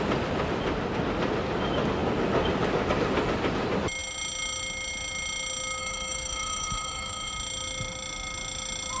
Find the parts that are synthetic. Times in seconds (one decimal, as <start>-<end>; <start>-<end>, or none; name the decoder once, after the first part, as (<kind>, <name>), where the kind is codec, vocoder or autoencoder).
5.8-7.3 (autoencoder, DAC-VAE)

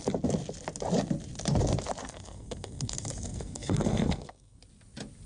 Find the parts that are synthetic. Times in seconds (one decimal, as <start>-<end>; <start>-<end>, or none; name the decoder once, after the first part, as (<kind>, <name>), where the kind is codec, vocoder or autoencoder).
2.0-4.6 (codec, SNAC)

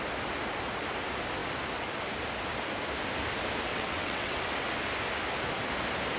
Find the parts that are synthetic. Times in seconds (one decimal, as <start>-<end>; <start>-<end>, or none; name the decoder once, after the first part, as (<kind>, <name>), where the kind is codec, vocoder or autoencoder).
3.7-4.4 (vocoder, WaveNeXt)

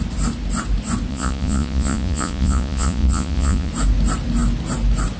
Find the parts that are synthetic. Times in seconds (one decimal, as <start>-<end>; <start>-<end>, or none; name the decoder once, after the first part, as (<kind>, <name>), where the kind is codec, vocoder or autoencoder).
1.1-3.7 (vocoder, Vocos)